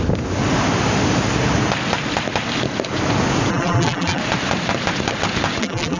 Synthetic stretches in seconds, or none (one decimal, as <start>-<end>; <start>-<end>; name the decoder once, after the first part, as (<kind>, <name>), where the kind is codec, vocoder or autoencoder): 3.5-4.2 (vocoder, BigVGAN v2); 5.6-6.0